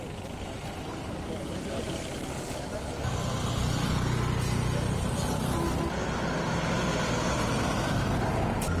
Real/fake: real